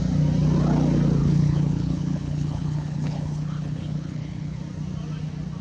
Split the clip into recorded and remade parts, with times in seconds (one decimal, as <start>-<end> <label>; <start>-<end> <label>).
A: 0.0-1.2 recorded; 1.2-4.6 remade; 4.6-5.6 recorded